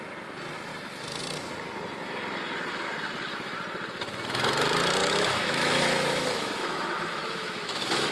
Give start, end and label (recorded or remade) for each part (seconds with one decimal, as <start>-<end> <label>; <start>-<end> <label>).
0.0-5.0 recorded; 5.0-8.1 remade